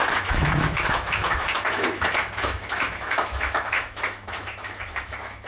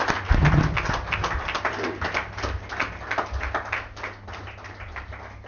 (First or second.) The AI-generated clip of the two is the first